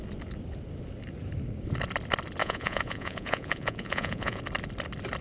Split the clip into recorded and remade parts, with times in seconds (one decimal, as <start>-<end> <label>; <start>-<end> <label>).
0.0-2.4 recorded; 2.4-4.4 remade; 4.4-5.2 recorded

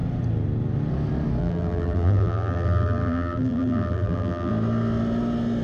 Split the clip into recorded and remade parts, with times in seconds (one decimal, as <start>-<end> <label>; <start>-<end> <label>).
0.0-1.4 recorded; 1.4-4.5 remade; 4.5-5.6 recorded

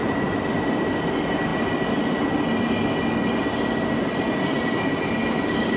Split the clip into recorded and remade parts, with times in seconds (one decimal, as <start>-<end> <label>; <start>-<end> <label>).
0.0-5.8 recorded

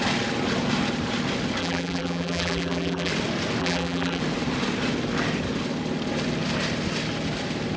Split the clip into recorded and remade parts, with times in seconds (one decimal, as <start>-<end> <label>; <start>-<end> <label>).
0.0-1.6 recorded; 1.6-3.1 remade; 3.1-3.6 recorded; 3.6-4.2 remade; 4.2-7.8 recorded